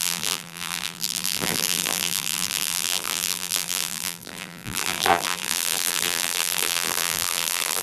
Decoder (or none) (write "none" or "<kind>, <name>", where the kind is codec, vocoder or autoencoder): vocoder, BigVGAN v2